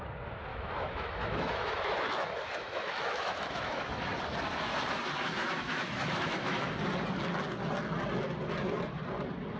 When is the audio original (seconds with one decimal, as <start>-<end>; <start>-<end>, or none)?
0.0-0.5; 4.1-5.4; 6.7-9.6